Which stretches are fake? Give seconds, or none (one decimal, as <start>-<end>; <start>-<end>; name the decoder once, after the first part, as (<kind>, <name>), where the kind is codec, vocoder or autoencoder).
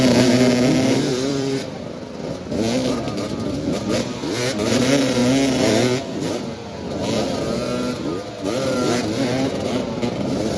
1.1-1.8 (vocoder, BigVGAN v2)